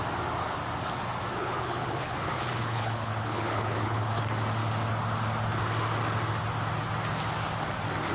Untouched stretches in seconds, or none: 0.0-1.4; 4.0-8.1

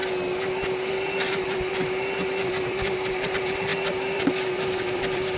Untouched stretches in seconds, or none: 0.0-0.9; 1.8-2.4

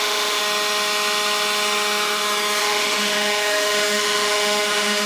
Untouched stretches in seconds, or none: 0.4-2.6

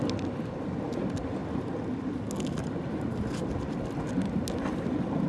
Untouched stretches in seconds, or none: 0.0-5.3